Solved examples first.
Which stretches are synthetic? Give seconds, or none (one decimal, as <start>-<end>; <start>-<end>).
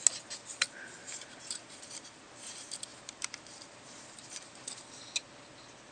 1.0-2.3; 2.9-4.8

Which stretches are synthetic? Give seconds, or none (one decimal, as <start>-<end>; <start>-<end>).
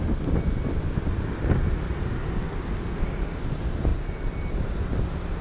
none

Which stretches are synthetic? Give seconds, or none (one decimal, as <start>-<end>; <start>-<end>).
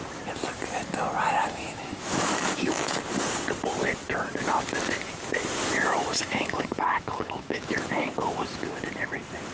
1.4-3.0; 5.6-8.8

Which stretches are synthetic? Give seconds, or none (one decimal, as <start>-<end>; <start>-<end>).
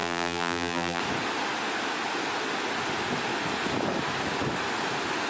0.0-1.0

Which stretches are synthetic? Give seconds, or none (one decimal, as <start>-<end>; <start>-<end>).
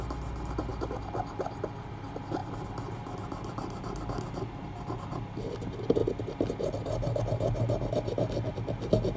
none